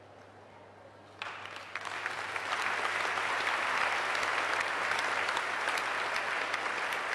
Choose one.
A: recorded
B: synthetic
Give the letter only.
A